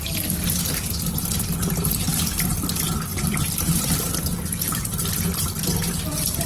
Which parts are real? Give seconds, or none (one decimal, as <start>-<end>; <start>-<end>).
0.0-3.1